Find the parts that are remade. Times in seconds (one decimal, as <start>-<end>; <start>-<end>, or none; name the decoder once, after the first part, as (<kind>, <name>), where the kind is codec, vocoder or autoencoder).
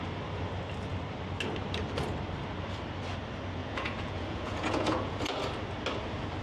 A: 3.6-5.2 (vocoder, Vocos)